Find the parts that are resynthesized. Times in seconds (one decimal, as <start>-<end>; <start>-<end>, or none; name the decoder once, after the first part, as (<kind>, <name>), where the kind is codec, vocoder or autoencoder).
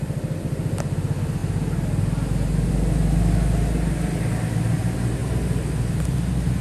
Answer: 5.2-6.6 (vocoder, BigVGAN v2)